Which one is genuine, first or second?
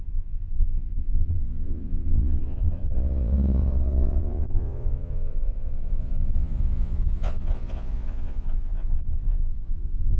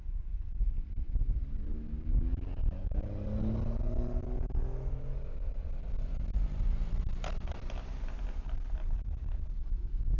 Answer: second